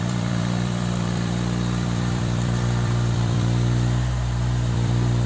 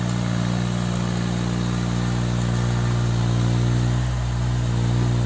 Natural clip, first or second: second